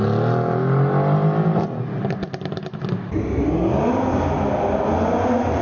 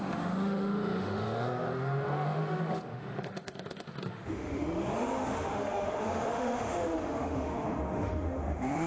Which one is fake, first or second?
second